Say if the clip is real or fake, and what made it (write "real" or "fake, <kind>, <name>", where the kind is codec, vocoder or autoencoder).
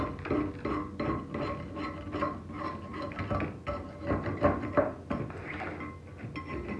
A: real